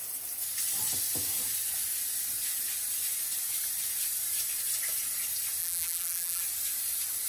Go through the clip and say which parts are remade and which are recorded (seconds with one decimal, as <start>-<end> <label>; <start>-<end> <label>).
0.0-5.6 recorded; 5.6-6.4 remade; 6.4-7.3 recorded

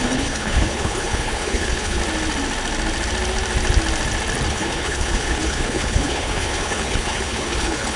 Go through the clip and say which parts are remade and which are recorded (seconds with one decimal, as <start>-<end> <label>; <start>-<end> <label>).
0.0-2.0 remade; 2.0-4.5 recorded; 4.5-8.0 remade

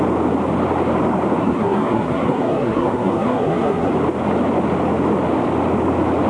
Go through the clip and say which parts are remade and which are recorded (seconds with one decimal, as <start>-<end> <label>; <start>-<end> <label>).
0.0-1.4 recorded; 1.4-3.9 remade; 3.9-6.3 recorded